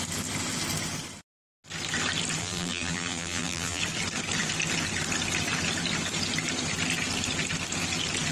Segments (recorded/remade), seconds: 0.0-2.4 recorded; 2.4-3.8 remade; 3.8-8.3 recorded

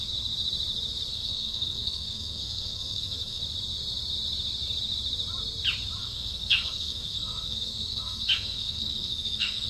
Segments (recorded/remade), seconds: 0.0-1.1 recorded; 1.1-3.4 remade; 3.4-6.0 recorded; 6.0-9.7 remade

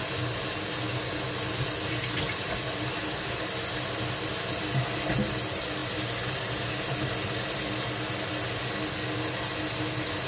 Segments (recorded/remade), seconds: 0.0-10.3 recorded

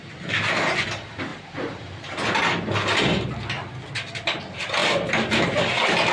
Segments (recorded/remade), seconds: 0.0-6.1 recorded